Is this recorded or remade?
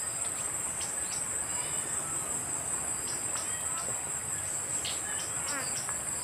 recorded